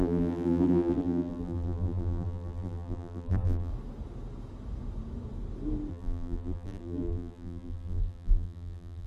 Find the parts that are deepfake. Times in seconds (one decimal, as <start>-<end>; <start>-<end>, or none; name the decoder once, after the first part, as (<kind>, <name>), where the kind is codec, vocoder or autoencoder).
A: 0.0-3.7 (vocoder, BigVGAN v2); 5.9-9.1